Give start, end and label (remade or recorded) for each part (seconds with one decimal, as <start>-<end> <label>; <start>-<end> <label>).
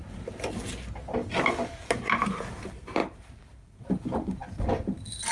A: 0.0-5.3 recorded